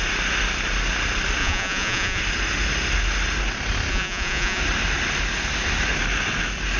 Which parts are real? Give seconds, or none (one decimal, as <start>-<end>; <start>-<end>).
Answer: 0.0-1.4; 2.2-3.9; 4.6-6.8